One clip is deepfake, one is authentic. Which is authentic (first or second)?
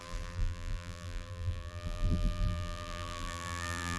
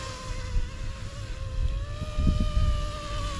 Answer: second